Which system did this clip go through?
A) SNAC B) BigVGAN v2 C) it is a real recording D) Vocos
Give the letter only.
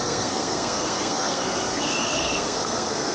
A